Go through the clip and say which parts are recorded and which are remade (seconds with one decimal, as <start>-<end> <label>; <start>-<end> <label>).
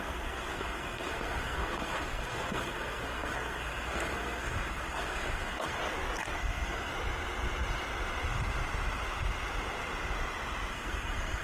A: 0.0-5.8 remade; 5.8-6.4 recorded; 6.4-6.9 remade; 6.9-10.7 recorded; 10.7-11.4 remade